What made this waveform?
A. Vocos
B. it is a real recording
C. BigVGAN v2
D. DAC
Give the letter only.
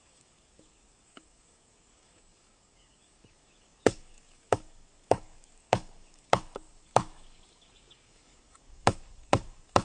D